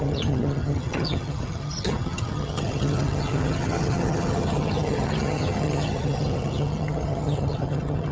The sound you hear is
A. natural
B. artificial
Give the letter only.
B